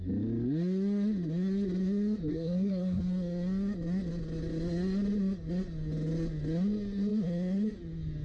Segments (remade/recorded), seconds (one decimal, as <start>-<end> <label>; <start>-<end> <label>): 0.0-2.3 recorded; 2.3-3.0 remade; 3.0-8.2 recorded